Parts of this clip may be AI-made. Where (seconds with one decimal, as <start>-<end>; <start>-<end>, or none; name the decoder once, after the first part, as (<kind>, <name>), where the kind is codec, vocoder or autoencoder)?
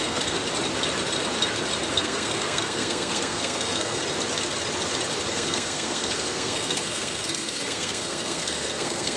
0.0-0.4 (codec, SNAC); 1.9-4.0; 5.3-9.2